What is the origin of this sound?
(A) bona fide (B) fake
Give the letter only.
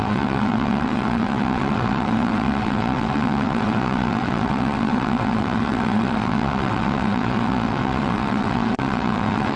B